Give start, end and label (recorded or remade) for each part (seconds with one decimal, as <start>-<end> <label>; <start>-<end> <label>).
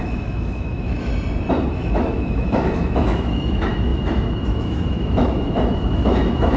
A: 0.0-1.1 remade; 1.1-1.7 recorded; 1.7-6.6 remade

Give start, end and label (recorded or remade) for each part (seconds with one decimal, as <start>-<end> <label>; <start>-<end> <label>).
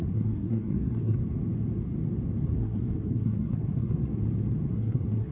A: 0.0-1.2 remade; 1.2-2.5 recorded; 2.5-4.1 remade; 4.1-4.7 recorded; 4.7-5.3 remade